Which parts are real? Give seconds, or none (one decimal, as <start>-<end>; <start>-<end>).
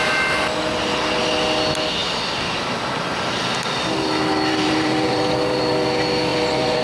0.0-4.5; 5.6-6.3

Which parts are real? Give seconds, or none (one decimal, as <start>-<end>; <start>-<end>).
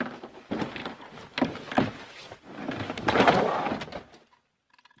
0.0-0.8; 3.4-5.0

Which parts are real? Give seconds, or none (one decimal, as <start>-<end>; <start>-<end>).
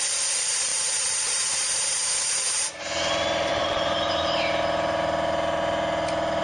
0.0-0.7; 2.8-3.5; 4.1-6.4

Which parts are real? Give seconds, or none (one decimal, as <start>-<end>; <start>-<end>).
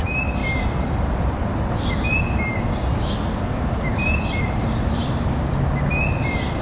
0.4-4.4; 5.0-6.6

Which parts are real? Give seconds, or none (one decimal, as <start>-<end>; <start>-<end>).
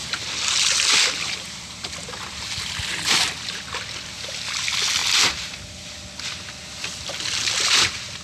2.1-8.2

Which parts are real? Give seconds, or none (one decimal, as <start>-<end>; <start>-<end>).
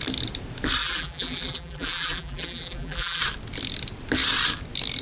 0.0-0.8; 3.2-5.0